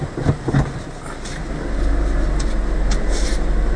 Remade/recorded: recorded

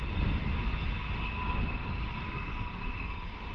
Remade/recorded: recorded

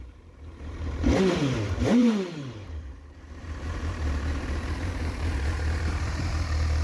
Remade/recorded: remade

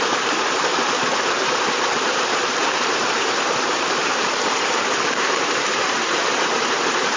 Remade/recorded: remade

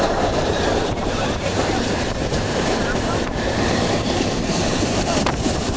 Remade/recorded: remade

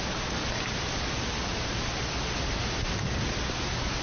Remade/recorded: recorded